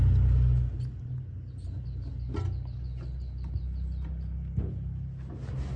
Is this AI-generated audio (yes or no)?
no